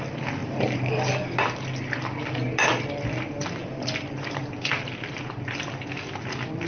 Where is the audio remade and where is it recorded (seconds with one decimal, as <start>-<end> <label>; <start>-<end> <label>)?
0.0-6.7 recorded